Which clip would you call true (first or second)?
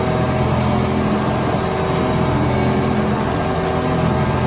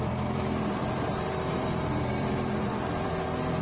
first